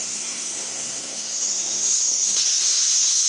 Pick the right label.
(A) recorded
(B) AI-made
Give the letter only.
B